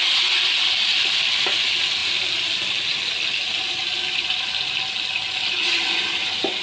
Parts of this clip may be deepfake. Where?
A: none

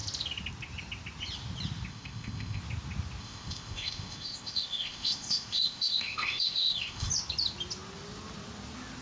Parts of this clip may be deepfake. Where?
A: 1.9-2.6 (codec, ZipCodec); 3.2-7.1

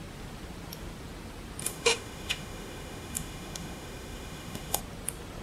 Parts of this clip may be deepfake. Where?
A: 1.6-4.8 (autoencoder, DAC-VAE)

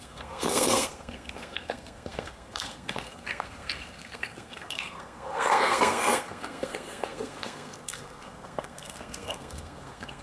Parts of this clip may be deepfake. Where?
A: 0.0-10.2 (codec, SNAC)